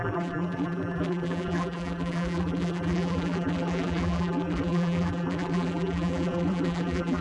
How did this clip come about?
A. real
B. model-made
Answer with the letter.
B